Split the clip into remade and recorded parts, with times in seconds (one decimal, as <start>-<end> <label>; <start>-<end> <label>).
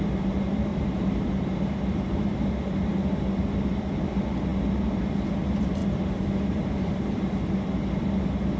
0.0-0.7 recorded; 0.7-1.6 remade; 1.6-5.8 recorded; 5.8-7.7 remade; 7.7-8.6 recorded